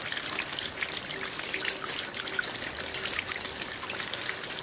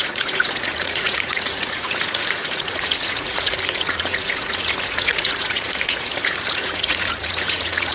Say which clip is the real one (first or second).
first